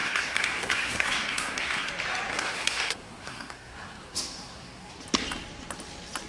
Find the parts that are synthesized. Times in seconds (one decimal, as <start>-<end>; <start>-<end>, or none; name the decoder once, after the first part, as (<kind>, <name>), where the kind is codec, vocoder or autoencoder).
0.0-1.9 (codec, SNAC); 2.3-5.0

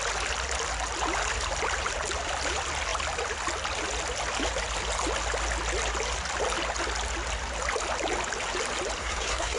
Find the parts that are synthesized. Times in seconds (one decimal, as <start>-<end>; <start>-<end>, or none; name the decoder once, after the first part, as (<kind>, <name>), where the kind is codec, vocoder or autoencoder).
9.0-9.6 (codec, SNAC)

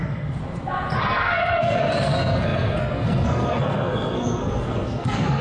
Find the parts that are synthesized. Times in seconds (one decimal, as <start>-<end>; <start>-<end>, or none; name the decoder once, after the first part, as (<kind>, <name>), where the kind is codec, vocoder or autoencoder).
0.0-0.4 (codec, SNAC); 1.0-5.4

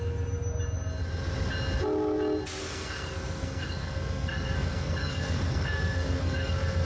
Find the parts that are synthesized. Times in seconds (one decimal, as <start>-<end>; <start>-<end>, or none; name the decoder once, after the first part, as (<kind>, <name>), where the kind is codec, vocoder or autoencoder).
2.6-6.9 (codec, SNAC)